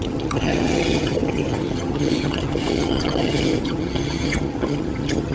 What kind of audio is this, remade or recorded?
remade